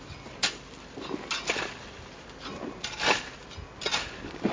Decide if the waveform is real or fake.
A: real